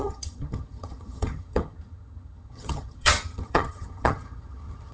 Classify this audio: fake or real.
fake